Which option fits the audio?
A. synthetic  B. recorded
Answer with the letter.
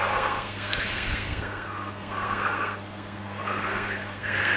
A